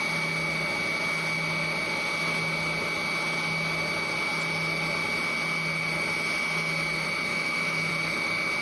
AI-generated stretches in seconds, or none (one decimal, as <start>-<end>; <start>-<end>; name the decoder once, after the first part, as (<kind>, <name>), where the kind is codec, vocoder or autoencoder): 7.3-7.9 (autoencoder, DAC-VAE)